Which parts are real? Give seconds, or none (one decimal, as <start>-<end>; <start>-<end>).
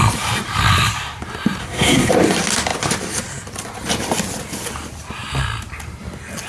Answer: 0.0-1.6; 2.1-6.5